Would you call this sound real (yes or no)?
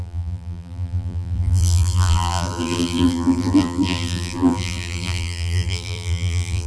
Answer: no